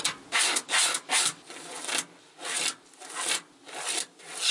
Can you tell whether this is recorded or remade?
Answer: recorded